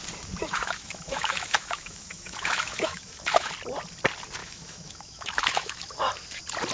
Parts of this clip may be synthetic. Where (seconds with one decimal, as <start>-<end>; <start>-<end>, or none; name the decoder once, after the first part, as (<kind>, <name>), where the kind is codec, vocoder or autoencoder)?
0.4-3.5 (autoencoder, DAC-VAE); 4.4-6.0

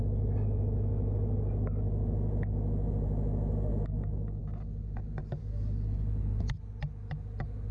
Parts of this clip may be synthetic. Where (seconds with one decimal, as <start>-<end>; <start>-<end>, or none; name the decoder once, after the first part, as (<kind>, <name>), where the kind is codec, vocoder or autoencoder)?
none

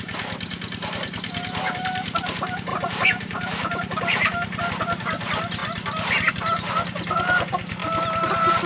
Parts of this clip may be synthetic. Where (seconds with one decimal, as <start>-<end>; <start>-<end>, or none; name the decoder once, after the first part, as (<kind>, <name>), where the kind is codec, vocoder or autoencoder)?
2.7-4.6 (vocoder, BigVGAN v2)